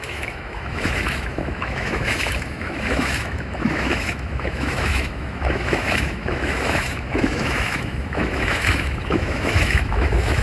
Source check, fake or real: fake